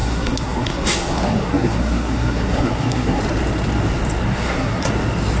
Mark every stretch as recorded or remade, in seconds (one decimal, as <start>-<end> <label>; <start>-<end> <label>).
0.0-3.2 remade; 3.2-4.3 recorded; 4.3-4.9 remade; 4.9-5.4 recorded

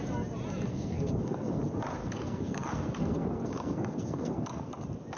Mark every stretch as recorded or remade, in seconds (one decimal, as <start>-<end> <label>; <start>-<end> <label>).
0.0-0.7 recorded; 0.7-1.6 remade; 1.6-2.0 recorded; 2.0-4.7 remade; 4.7-5.2 recorded

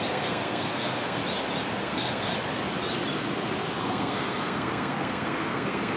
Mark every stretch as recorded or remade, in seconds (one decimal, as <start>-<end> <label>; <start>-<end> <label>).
0.0-1.2 remade; 1.2-1.8 recorded; 1.8-2.3 remade; 2.3-3.8 recorded; 3.8-6.0 remade

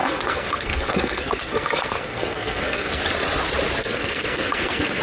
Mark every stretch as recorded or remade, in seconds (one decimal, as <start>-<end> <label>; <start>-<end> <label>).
0.0-3.0 remade; 3.0-3.8 recorded; 3.8-5.0 remade

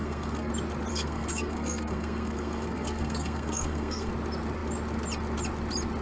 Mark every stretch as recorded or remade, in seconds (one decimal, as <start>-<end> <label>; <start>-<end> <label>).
0.0-0.5 remade; 0.5-0.9 recorded; 0.9-4.1 remade; 4.1-6.0 recorded

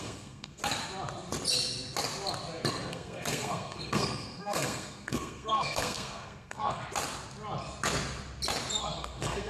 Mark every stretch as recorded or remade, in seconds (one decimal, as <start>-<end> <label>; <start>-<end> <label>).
0.0-0.6 remade; 0.6-2.9 recorded; 2.9-6.8 remade; 6.8-8.8 recorded; 8.8-9.5 remade

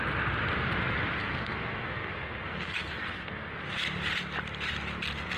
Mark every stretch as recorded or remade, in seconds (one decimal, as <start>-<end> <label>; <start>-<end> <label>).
0.0-1.2 recorded; 1.2-3.5 remade; 3.5-5.4 recorded

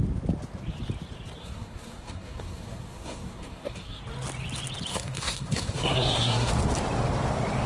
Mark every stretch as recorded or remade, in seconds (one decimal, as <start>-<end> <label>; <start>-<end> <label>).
0.0-1.4 recorded; 1.4-4.0 remade; 4.0-4.9 recorded; 4.9-6.5 remade; 6.5-7.7 recorded